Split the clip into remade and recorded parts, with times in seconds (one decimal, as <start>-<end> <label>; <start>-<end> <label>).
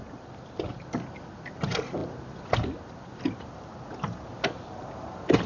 0.0-5.5 recorded